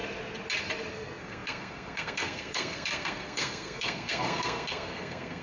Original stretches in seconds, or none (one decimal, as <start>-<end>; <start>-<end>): 0.0-0.9